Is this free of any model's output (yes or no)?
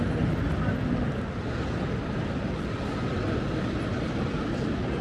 yes